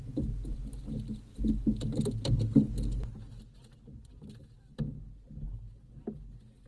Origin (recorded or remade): recorded